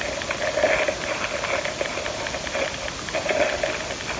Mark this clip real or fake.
real